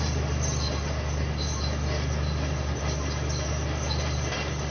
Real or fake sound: real